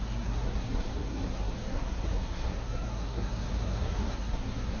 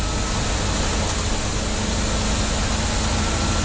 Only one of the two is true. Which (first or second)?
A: second